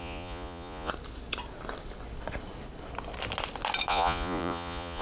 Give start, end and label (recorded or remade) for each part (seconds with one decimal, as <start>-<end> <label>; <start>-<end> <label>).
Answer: 0.0-0.9 remade; 0.9-3.9 recorded; 3.9-5.0 remade